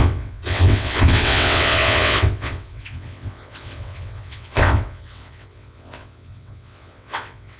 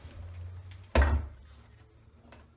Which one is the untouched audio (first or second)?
second